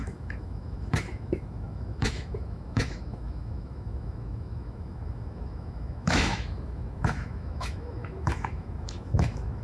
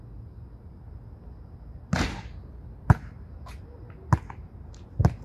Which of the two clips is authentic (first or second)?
second